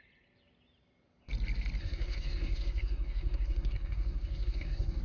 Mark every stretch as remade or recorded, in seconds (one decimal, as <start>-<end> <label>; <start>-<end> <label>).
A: 0.0-1.8 recorded; 1.8-5.0 remade